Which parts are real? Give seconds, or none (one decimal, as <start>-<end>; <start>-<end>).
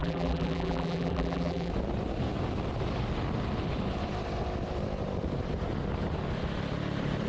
1.7-7.3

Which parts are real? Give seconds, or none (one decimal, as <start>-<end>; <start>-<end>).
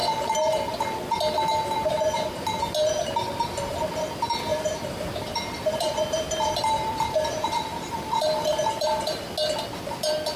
0.0-4.5; 9.2-10.4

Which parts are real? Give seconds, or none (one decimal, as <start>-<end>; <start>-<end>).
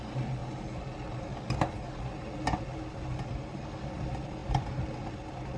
0.4-3.8